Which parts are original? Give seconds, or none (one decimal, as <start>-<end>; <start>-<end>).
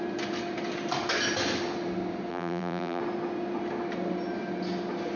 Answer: 0.0-2.3; 3.0-5.2